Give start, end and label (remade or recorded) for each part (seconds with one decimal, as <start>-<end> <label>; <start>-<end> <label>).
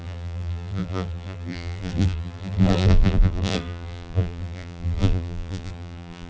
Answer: 0.0-6.3 remade